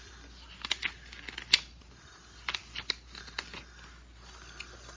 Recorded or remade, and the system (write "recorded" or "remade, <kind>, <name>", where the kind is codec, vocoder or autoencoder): recorded